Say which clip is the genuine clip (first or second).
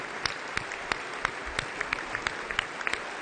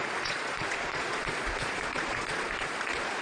first